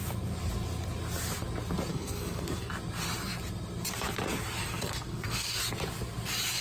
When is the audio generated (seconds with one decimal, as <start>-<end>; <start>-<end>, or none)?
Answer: 1.9-2.7; 4.6-5.6